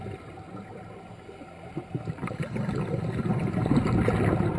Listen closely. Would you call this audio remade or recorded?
recorded